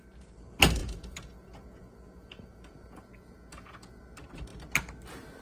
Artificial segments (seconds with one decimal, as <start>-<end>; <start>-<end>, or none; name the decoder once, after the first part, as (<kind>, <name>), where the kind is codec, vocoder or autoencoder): 0.8-4.0 (vocoder, Vocos)